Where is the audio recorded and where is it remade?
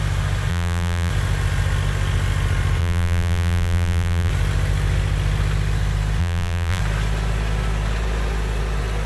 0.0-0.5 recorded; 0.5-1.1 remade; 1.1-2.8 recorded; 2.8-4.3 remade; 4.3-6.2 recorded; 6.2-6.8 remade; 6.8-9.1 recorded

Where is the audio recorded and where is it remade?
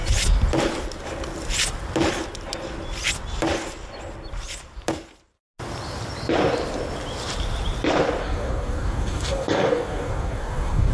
0.0-8.2 recorded; 8.2-10.9 remade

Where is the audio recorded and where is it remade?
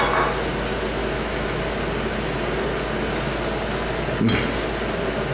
0.0-1.0 recorded; 1.0-1.6 remade; 1.6-5.3 recorded